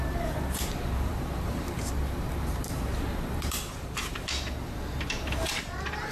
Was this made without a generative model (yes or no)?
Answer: no